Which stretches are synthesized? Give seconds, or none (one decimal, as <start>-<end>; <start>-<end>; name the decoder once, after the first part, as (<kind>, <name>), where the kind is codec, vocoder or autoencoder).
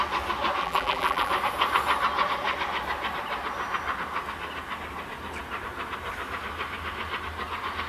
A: 0.6-1.3 (vocoder, BigVGAN v2)